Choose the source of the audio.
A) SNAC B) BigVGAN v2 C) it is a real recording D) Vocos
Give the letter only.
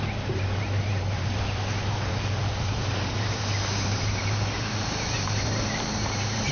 B